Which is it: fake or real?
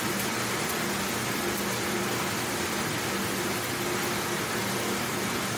real